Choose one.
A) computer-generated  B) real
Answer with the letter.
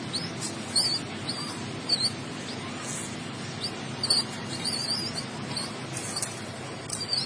B